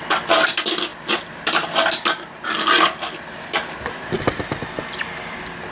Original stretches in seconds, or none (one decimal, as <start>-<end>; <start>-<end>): 0.0-5.7